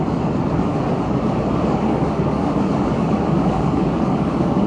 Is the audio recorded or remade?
remade